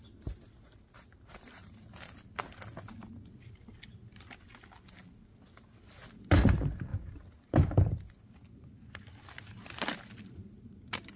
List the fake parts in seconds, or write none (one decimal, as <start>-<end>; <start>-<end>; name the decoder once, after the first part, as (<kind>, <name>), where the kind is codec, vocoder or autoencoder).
none